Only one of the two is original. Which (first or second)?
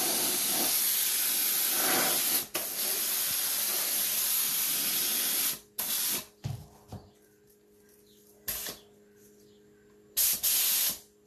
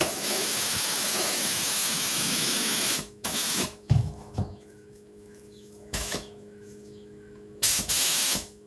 first